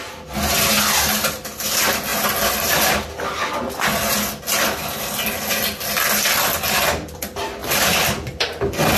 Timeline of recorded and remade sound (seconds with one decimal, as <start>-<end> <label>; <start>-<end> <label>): 0.0-9.0 recorded